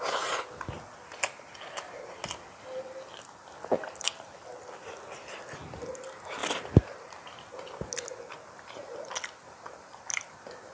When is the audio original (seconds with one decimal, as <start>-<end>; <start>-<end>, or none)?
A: 0.0-6.4; 7.9-10.7